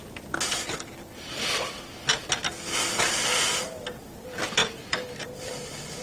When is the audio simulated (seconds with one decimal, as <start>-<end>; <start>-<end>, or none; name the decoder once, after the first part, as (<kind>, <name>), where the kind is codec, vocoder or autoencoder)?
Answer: none